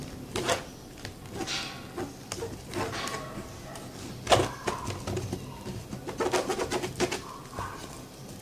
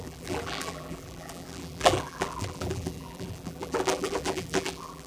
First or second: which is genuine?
first